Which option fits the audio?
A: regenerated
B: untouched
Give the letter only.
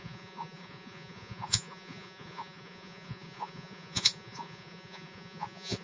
A